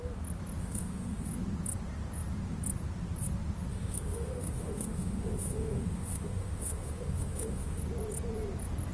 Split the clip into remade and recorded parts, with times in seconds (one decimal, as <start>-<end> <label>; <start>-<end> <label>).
0.0-0.6 recorded; 0.6-1.3 remade; 1.3-3.7 recorded; 3.7-7.8 remade; 7.8-8.9 recorded